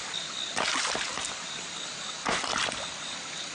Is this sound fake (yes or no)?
yes